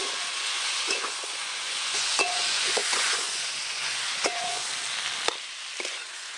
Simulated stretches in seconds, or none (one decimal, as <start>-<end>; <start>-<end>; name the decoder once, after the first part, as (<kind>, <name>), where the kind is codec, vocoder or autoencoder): 0.0-4.7 (vocoder, Vocos); 5.9-6.4